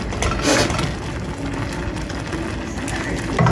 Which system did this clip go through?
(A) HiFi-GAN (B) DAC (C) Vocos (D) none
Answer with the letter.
D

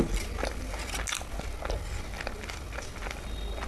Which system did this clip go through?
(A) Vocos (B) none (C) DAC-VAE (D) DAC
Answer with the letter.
B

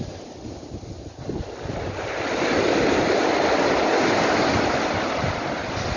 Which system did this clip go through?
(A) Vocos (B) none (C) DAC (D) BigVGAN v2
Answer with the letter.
B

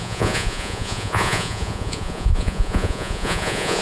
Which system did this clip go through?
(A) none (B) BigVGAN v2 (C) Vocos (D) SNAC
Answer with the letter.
C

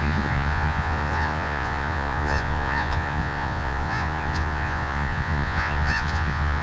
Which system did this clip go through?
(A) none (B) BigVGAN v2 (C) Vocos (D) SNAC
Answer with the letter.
C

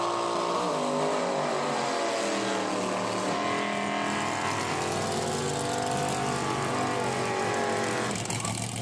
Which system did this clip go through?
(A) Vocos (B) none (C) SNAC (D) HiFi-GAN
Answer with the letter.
B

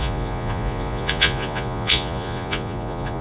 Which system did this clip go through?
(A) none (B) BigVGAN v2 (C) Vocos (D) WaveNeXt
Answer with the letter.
C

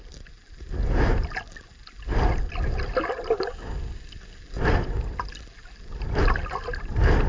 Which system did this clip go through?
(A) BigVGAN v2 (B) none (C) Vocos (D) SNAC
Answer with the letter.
B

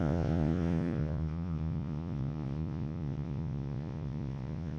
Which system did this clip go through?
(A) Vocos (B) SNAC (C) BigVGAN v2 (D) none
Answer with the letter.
A